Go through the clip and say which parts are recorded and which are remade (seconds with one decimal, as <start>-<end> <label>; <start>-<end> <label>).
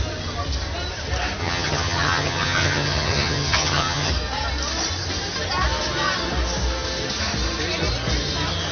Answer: 0.0-1.4 recorded; 1.4-4.1 remade; 4.1-8.7 recorded